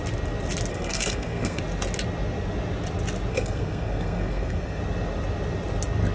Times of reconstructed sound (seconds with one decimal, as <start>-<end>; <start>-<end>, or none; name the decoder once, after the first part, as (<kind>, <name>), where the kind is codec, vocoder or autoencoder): 0.7-1.6 (codec, SNAC); 3.3-4.8